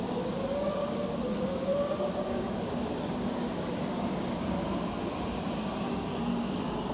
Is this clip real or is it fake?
fake